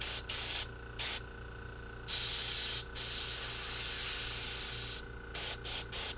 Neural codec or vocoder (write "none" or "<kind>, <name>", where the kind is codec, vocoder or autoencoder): none